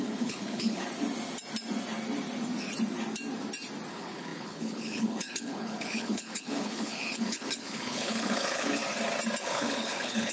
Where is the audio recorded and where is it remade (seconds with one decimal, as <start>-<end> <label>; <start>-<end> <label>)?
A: 0.0-0.8 remade; 0.8-3.9 recorded; 3.9-8.8 remade; 8.8-9.4 recorded; 9.4-10.3 remade